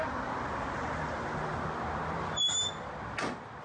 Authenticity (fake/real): real